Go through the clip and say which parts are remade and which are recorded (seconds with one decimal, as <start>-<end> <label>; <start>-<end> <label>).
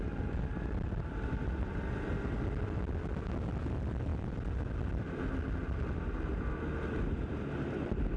0.0-8.2 recorded